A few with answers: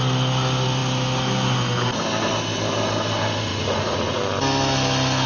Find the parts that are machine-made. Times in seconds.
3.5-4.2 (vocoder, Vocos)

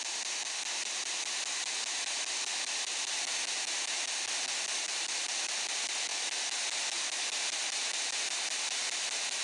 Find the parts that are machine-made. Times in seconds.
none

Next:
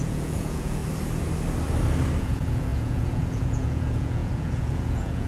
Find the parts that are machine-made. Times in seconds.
0.0-0.8 (vocoder, Vocos); 2.2-5.3

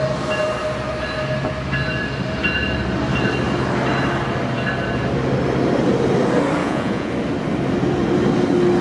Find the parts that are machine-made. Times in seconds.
6.6-7.1 (vocoder, Vocos)